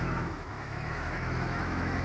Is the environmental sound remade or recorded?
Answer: remade